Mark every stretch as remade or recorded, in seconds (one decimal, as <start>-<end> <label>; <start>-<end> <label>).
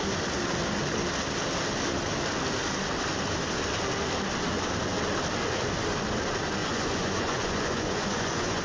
0.0-6.6 recorded; 6.6-8.6 remade